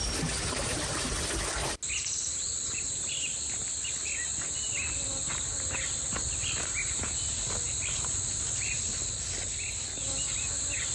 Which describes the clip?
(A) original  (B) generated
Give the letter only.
A